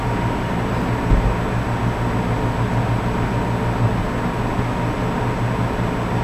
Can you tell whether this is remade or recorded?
recorded